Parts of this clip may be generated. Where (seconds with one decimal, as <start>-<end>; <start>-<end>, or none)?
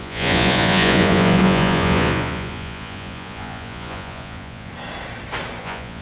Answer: 0.0-4.7; 5.6-6.0